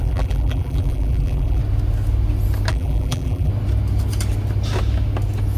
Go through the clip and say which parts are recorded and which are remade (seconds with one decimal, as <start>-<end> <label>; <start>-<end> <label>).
0.0-1.6 remade; 1.6-2.7 recorded; 2.7-3.5 remade; 3.5-5.6 recorded